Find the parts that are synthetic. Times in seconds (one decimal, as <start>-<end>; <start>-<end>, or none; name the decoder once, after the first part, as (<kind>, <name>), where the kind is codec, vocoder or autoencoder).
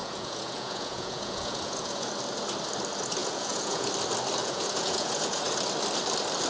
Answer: 0.0-2.1 (vocoder, Vocos); 3.2-3.9; 4.4-5.4